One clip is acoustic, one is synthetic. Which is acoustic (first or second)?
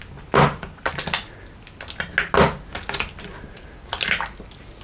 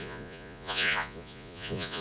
first